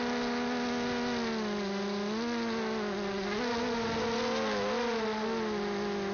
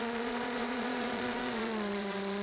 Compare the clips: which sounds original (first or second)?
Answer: first